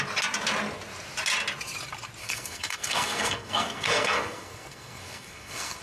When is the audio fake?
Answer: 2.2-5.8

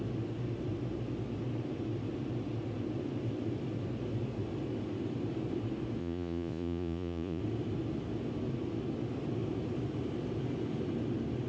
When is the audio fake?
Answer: 6.0-7.4

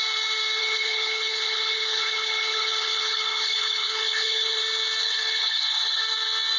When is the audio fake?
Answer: 0.6-4.6; 5.0-6.0